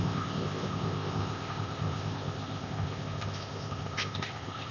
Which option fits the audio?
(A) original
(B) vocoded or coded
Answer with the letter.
B